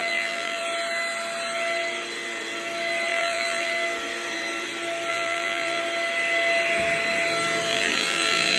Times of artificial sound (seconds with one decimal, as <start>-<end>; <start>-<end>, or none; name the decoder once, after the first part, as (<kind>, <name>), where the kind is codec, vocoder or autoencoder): 0.0-0.6 (vocoder, BigVGAN v2); 3.1-3.7; 5.1-5.8; 7.7-8.6